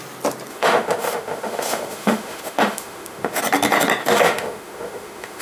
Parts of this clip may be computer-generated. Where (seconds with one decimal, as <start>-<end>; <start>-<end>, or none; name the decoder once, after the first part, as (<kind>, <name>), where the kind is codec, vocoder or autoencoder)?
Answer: 0.5-3.4 (autoencoder, DAC-VAE); 4.0-5.4